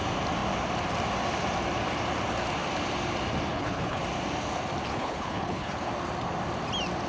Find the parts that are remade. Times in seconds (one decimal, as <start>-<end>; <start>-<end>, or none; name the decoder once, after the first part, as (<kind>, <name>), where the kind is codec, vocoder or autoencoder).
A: 3.5-4.0 (codec, HILCodec); 4.9-5.9